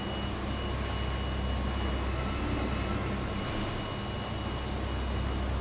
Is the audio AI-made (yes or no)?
no